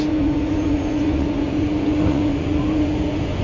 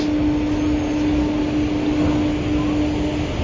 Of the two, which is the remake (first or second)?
first